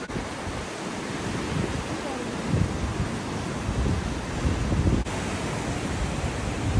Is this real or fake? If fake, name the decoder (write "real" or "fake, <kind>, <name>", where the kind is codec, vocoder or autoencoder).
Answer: real